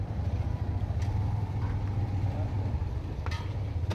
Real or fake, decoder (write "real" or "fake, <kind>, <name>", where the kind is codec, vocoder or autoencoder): real